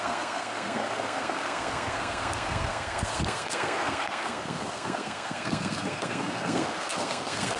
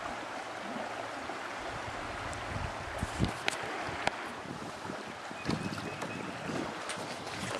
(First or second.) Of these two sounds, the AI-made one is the first